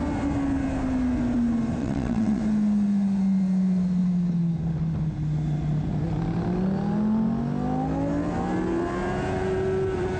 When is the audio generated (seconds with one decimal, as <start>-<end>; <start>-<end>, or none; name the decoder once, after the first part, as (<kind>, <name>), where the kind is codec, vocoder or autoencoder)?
1.8-2.4 (vocoder, WaveNeXt)